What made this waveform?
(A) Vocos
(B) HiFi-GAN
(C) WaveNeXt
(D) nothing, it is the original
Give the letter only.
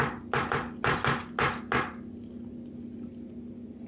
D